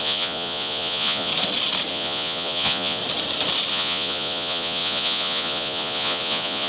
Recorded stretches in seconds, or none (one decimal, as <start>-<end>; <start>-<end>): 1.3-1.9; 3.0-3.7